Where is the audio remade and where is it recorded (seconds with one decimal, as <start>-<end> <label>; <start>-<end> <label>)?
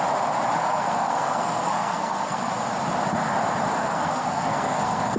0.0-0.6 recorded; 0.6-2.5 remade; 2.5-3.8 recorded; 3.8-5.2 remade